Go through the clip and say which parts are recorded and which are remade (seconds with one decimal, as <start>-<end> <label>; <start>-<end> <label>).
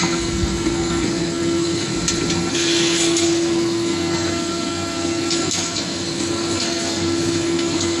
0.0-1.9 remade; 1.9-2.5 recorded; 2.5-8.0 remade